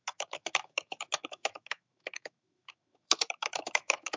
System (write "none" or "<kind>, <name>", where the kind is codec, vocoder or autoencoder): autoencoder, DAC-VAE